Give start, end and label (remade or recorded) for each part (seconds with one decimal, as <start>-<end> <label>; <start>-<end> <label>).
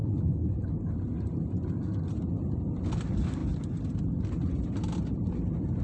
0.0-0.9 remade; 0.9-5.8 recorded